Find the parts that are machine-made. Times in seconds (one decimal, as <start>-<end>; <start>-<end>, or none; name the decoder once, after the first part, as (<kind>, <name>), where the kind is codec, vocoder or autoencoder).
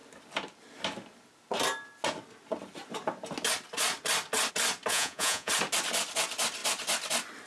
4.9-5.5 (vocoder, Vocos)